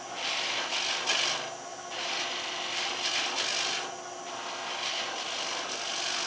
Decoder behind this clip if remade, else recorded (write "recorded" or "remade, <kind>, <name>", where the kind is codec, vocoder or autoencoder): recorded